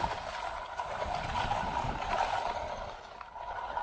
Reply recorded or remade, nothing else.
recorded